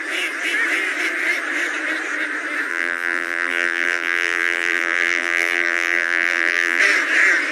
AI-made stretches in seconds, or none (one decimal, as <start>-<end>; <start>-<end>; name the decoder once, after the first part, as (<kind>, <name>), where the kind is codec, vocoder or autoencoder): 2.7-6.8 (vocoder, BigVGAN v2)